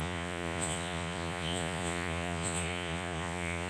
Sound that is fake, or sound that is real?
fake